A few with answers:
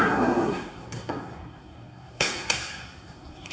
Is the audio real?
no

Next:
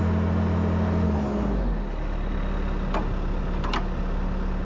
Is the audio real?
yes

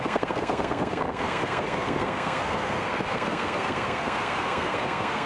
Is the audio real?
no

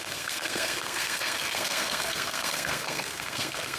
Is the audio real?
no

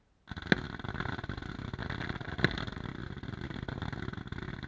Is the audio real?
yes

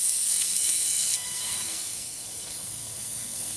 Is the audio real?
no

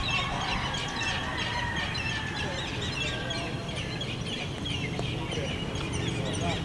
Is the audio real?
yes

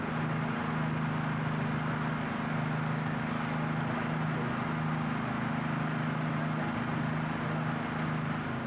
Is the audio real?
yes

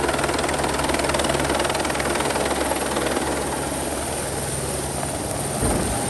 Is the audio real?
yes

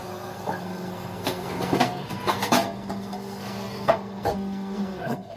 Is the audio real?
no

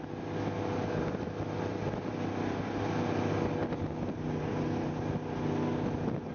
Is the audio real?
yes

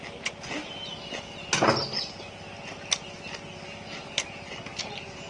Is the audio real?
yes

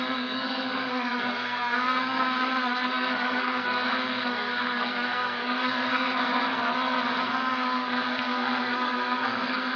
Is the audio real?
no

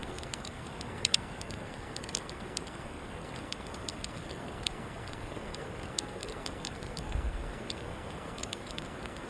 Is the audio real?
no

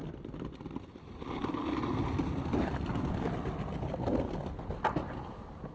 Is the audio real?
yes